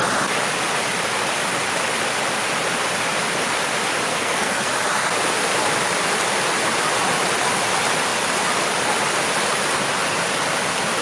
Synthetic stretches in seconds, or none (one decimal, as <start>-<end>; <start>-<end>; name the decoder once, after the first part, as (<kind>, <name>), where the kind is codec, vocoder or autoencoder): 4.1-4.7 (codec, SNAC)